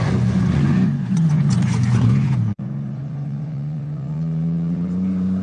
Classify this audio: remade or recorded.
remade